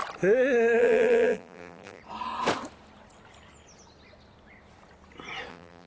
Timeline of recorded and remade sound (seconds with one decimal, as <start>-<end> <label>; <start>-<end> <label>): 0.0-0.8 recorded; 0.8-2.0 remade; 2.0-5.5 recorded; 5.5-5.9 remade